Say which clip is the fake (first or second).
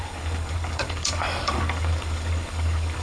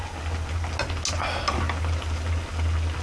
first